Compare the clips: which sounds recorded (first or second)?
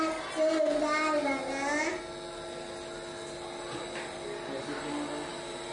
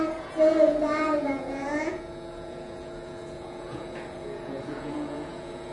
first